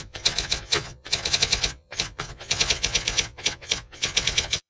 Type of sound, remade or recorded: remade